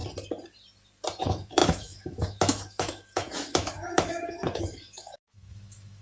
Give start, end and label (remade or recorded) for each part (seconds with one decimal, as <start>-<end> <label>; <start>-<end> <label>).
0.0-1.2 recorded; 1.2-6.0 remade

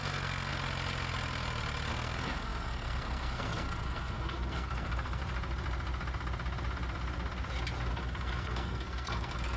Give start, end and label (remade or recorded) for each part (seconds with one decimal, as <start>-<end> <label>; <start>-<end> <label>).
0.0-0.5 remade; 0.5-1.9 recorded; 1.9-5.2 remade; 5.2-7.9 recorded; 7.9-9.6 remade

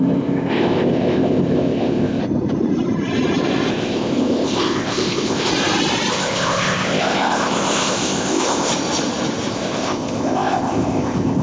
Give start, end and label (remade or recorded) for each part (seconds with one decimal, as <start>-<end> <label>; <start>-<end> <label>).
0.0-2.2 remade; 2.2-3.7 recorded; 3.7-5.5 remade; 5.5-6.1 recorded; 6.1-8.7 remade; 8.7-9.5 recorded; 9.5-11.4 remade